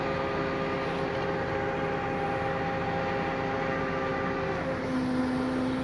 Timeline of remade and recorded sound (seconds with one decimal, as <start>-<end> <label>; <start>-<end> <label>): 0.0-5.8 recorded